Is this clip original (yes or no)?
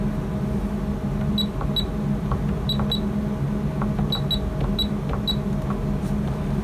yes